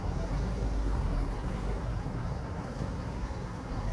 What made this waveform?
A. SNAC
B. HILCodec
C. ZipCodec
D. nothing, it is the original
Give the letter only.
A